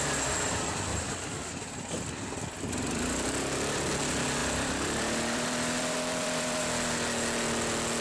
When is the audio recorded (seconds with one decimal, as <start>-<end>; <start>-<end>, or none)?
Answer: 0.0-0.9; 4.0-4.4; 6.6-8.0